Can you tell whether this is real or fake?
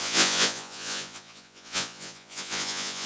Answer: fake